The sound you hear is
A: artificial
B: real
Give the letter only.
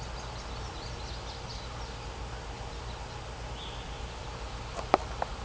B